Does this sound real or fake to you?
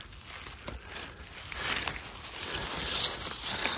real